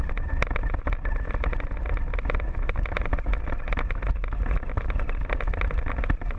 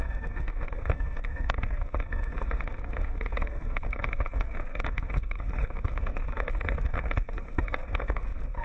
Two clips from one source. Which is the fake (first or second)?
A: second